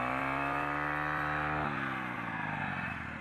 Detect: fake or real real